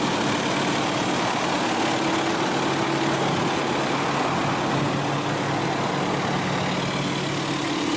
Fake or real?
real